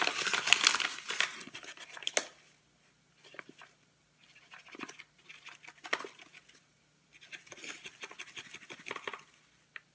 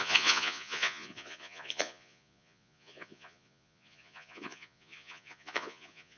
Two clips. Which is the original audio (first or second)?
first